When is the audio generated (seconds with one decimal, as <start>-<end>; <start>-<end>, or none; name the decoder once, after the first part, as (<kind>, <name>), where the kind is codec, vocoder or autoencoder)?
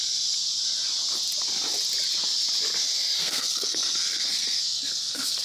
3.2-5.4 (codec, SNAC)